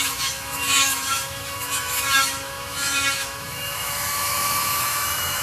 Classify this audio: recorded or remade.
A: remade